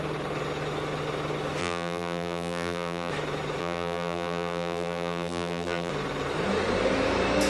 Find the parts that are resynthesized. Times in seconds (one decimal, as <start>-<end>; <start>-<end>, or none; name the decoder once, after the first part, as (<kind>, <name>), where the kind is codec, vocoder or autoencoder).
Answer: 1.6-3.1 (vocoder, BigVGAN v2); 3.6-5.9